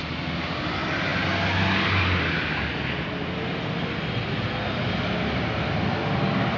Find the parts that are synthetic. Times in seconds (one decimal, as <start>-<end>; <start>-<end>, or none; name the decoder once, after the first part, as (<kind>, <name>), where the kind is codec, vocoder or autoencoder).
none